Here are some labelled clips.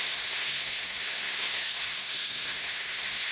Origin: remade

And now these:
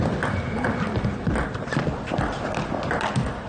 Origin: recorded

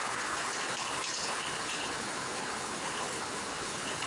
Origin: remade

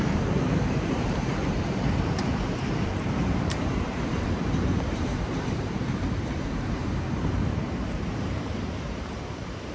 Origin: remade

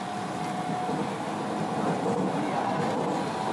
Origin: recorded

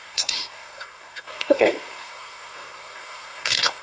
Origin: remade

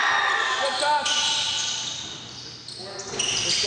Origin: recorded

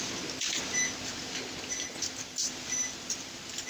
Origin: recorded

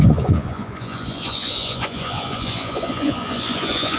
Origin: remade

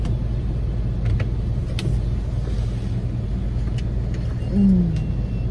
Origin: recorded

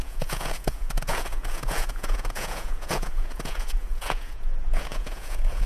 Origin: remade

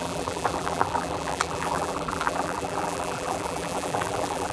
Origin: remade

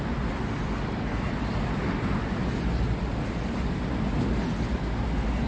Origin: recorded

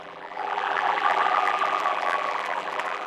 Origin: remade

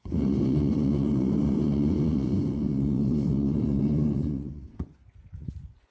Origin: remade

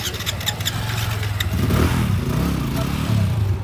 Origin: recorded